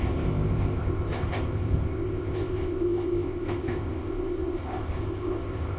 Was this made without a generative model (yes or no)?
no